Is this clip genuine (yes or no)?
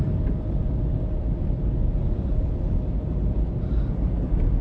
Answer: no